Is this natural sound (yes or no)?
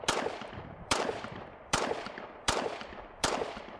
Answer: no